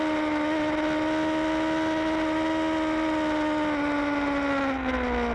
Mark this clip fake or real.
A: real